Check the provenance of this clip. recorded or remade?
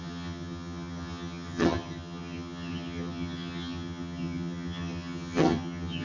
remade